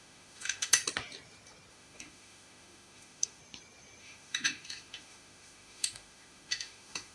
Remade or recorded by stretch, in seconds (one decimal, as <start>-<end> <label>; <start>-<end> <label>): 0.0-0.8 remade; 0.8-1.7 recorded; 1.7-3.4 remade; 3.4-4.0 recorded; 4.0-7.1 remade